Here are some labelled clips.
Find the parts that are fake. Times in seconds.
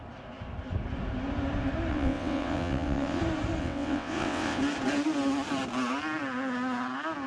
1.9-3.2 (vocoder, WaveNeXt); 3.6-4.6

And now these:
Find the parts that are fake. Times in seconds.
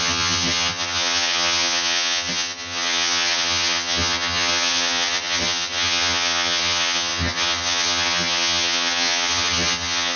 0.0-10.2 (vocoder, HiFi-GAN)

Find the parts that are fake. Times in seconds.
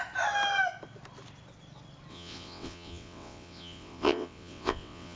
2.1-5.2 (vocoder, WaveNeXt)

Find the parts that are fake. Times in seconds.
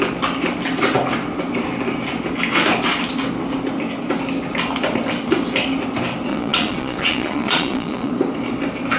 6.3-8.1 (vocoder, Vocos)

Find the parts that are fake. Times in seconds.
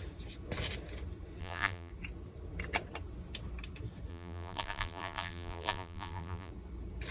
1.4-1.9 (vocoder, BigVGAN v2); 4.1-6.5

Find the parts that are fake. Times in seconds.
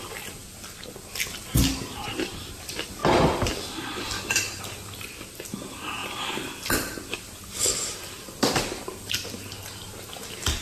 6.0-8.4 (vocoder, BigVGAN v2); 8.9-9.7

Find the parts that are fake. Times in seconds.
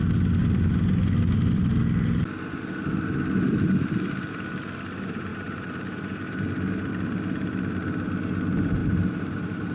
0.4-1.8 (vocoder, BigVGAN v2); 5.3-6.9; 8.8-9.7